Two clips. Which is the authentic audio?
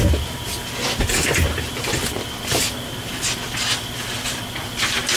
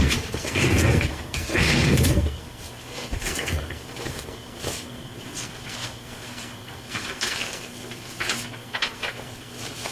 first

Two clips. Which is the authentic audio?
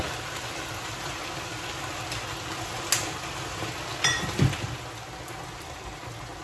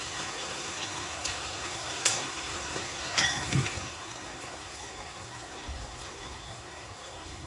first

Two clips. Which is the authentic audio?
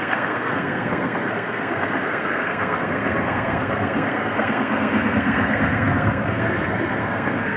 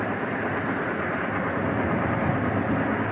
second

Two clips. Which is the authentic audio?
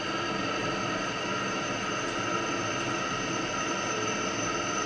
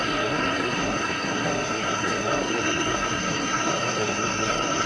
first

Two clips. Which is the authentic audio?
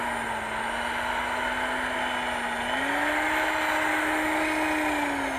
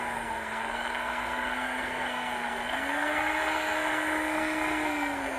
first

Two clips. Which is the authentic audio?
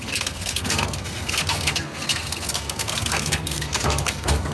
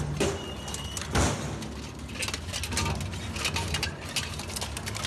second